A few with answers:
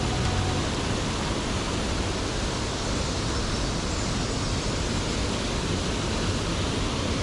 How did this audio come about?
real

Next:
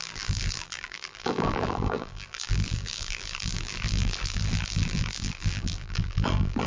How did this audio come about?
fake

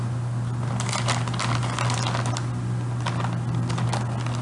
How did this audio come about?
real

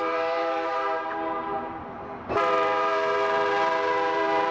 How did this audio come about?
fake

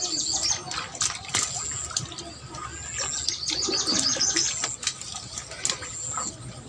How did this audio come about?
real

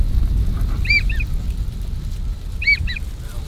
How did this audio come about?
real